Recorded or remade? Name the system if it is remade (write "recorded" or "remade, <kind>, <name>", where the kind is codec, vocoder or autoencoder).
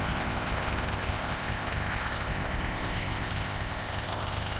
remade, codec, ZipCodec